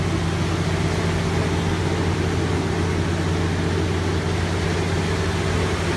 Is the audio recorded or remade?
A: recorded